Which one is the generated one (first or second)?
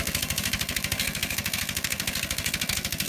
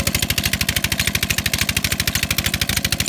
first